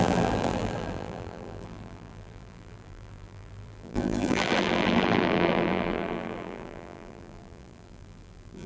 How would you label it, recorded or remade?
remade